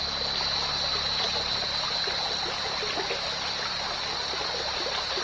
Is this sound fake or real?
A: real